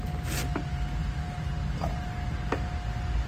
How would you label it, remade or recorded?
recorded